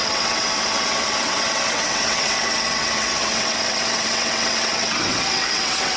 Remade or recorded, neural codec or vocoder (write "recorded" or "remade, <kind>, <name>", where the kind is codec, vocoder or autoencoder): remade, vocoder, WaveNeXt